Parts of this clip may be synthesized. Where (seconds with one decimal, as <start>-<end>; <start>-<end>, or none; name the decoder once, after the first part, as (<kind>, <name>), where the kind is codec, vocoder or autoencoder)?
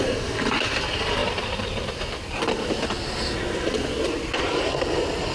none